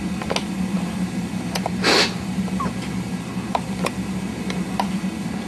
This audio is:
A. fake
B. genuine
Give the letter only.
B